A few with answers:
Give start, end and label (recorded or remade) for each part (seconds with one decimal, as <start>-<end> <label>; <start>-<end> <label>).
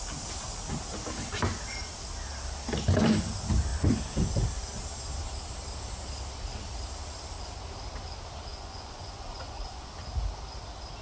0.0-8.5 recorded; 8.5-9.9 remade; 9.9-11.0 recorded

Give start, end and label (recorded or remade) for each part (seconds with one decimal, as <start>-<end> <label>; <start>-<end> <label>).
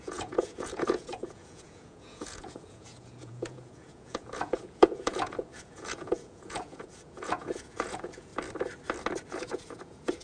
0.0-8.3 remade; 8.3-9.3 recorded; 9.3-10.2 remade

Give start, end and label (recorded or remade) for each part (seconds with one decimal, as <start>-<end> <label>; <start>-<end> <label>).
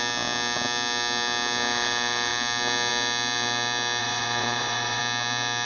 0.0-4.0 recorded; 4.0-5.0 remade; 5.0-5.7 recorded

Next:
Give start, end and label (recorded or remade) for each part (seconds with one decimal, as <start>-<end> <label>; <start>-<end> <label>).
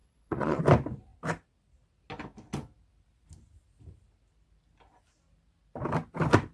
0.0-0.6 remade; 0.6-6.5 recorded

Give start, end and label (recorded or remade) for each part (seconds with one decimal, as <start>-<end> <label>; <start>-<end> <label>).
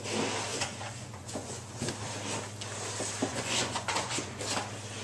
0.0-0.5 recorded; 0.5-1.9 remade; 1.9-3.3 recorded; 3.3-4.4 remade; 4.4-5.0 recorded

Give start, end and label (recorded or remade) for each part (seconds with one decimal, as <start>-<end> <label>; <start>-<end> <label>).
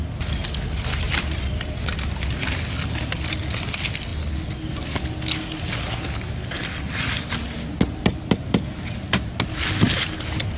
0.0-10.6 recorded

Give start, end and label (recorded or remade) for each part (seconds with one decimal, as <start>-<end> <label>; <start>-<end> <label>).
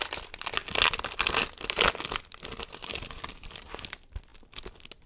0.0-5.1 recorded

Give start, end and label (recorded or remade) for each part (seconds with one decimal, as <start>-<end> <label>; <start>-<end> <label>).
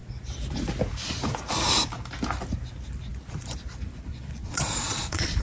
0.0-4.1 recorded; 4.1-5.4 remade